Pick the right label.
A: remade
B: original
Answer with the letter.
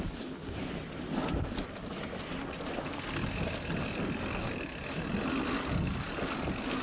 B